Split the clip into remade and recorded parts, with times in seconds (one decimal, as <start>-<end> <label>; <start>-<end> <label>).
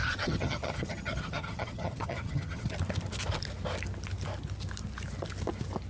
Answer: 0.0-2.7 remade; 2.7-5.9 recorded